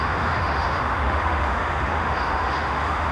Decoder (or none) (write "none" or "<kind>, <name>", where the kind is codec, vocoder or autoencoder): autoencoder, DAC-VAE